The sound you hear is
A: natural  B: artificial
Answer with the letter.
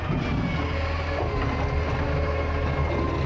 A